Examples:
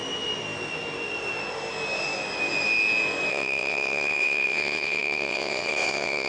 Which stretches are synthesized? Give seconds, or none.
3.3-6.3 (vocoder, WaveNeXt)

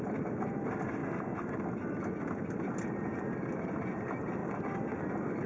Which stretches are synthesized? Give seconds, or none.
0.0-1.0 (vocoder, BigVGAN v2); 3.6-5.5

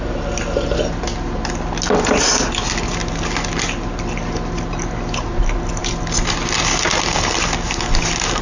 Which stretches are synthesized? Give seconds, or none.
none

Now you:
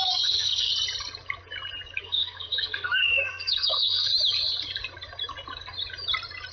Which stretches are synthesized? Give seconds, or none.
0.0-0.7 (codec, SNAC); 2.0-4.1

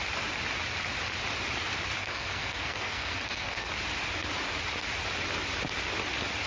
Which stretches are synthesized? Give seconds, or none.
2.0-3.7 (codec, SNAC)

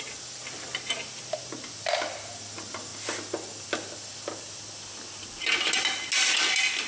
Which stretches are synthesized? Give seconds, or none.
none

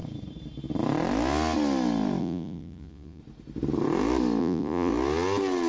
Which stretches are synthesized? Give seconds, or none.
2.2-3.2 (vocoder, Vocos); 4.4-4.9